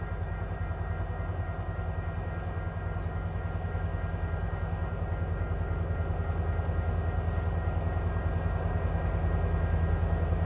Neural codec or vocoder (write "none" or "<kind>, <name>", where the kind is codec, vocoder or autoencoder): none